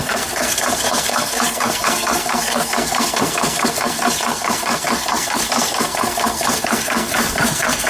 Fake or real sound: fake